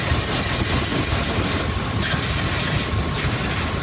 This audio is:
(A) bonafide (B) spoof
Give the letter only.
A